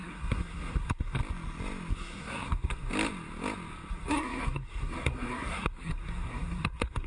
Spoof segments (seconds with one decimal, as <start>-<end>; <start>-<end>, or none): 0.0-1.2; 1.9-2.9; 3.9-7.1